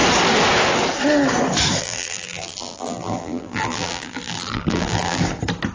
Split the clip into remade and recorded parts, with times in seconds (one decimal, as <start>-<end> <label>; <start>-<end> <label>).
0.0-1.8 recorded; 1.8-5.2 remade; 5.2-5.7 recorded